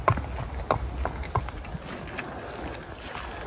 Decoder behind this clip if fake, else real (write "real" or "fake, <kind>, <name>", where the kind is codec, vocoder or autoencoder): real